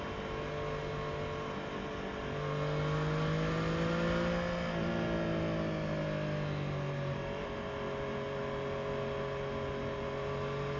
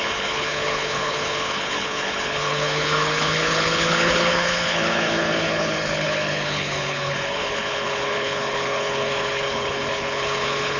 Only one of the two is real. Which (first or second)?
first